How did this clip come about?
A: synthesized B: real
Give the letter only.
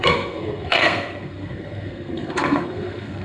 A